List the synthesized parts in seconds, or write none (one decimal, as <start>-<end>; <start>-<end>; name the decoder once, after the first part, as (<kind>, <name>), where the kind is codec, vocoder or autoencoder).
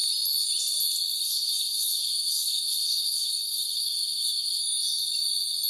1.2-4.6 (codec, SNAC)